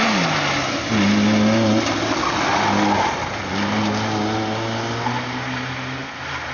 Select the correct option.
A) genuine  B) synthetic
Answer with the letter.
A